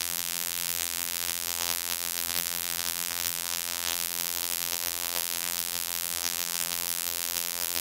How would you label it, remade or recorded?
remade